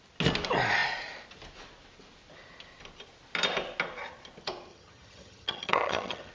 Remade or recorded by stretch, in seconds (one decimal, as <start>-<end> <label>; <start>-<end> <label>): 0.0-4.7 recorded; 4.7-6.3 remade